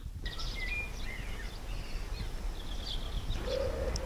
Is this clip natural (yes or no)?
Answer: yes